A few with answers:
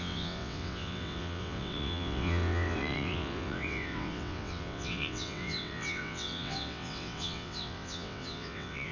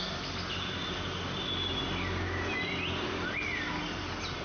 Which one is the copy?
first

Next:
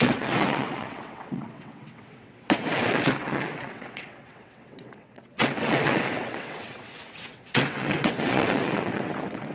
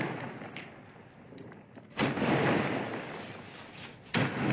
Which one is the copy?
first